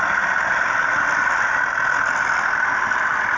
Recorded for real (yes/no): yes